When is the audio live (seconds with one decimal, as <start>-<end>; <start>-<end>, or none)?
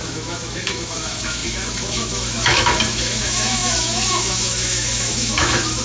none